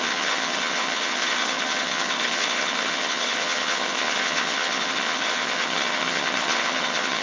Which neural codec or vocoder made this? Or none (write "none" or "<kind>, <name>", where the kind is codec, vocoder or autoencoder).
vocoder, HiFi-GAN